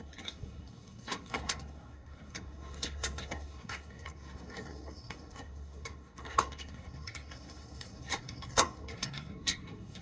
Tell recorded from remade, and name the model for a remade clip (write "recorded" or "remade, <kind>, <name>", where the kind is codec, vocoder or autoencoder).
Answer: remade, codec, SNAC